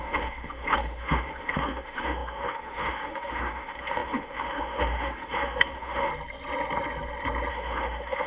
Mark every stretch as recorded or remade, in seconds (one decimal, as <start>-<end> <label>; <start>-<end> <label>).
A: 0.0-6.1 remade; 6.1-7.5 recorded; 7.5-8.3 remade